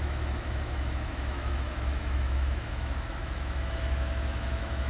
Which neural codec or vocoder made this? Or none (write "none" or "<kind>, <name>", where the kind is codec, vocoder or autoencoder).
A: autoencoder, DAC-VAE